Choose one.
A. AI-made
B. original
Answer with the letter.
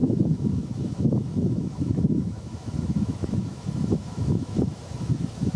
A